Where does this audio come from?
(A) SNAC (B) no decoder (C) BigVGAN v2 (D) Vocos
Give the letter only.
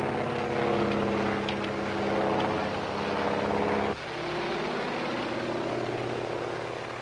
B